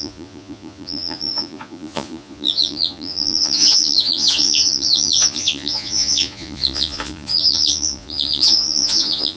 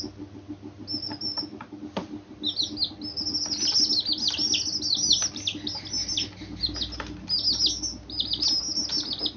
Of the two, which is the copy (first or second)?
first